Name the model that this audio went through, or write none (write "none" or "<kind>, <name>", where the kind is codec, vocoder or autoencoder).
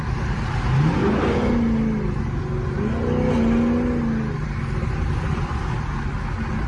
none